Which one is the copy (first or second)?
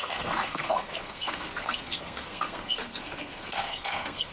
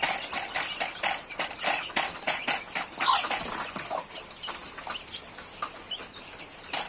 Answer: first